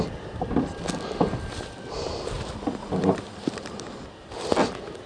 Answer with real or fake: real